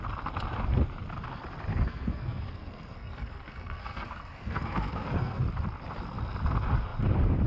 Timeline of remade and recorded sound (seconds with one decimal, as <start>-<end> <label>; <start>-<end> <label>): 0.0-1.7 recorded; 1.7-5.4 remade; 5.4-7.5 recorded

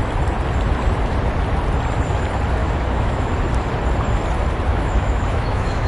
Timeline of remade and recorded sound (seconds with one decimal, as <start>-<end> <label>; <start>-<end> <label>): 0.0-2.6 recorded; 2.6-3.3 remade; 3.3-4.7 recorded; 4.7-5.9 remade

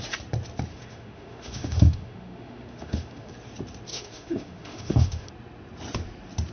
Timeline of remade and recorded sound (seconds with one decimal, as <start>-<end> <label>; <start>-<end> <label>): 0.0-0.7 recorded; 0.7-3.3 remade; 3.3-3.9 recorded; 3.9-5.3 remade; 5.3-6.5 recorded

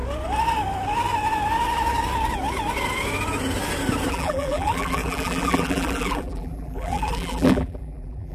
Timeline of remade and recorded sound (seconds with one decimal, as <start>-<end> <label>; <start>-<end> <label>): 0.0-4.1 recorded; 4.1-8.3 remade

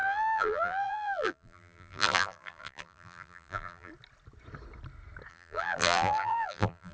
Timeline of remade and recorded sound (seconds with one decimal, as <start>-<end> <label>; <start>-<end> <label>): 0.0-3.9 remade; 3.9-5.3 recorded; 5.3-6.9 remade